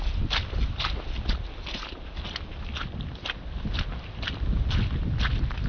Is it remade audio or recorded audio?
recorded